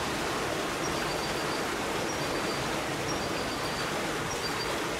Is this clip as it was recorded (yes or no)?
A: yes